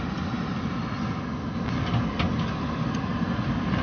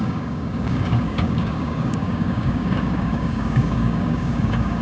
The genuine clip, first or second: first